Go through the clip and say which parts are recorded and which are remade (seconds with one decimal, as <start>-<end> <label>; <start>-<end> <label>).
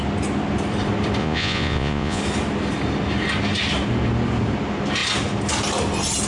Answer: 0.0-1.2 recorded; 1.2-2.2 remade; 2.2-6.3 recorded